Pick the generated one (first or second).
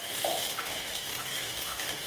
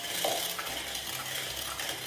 first